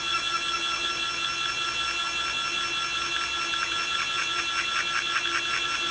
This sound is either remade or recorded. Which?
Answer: recorded